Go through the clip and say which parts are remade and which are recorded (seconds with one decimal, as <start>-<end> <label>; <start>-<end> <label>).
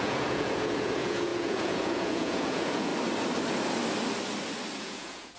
0.0-2.9 remade; 2.9-4.8 recorded; 4.8-5.4 remade